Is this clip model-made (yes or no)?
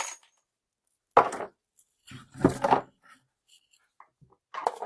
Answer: no